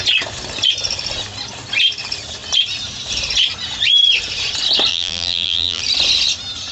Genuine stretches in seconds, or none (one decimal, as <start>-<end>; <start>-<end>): 0.0-4.9; 5.8-6.7